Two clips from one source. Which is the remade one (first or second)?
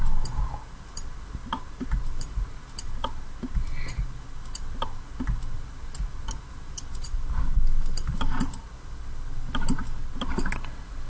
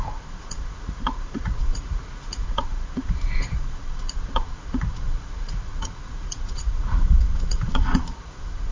second